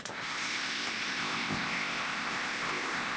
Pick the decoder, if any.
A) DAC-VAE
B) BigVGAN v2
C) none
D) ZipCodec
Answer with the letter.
D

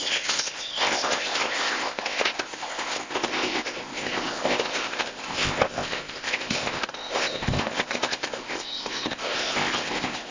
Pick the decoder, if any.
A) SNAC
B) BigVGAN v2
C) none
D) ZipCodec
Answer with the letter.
D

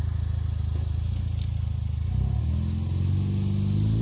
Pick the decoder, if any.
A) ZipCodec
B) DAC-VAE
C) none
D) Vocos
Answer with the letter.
C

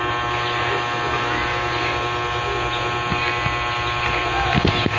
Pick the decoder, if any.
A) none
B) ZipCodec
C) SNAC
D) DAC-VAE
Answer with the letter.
A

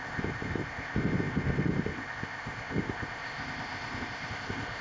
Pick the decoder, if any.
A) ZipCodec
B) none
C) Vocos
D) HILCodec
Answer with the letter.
A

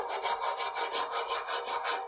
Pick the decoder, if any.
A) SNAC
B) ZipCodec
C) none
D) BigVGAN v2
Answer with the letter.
C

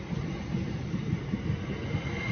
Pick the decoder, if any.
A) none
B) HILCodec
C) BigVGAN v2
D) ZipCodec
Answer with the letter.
A